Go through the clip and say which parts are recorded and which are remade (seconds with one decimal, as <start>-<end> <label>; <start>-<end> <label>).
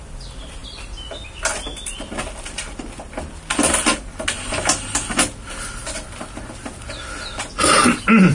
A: 0.0-8.3 recorded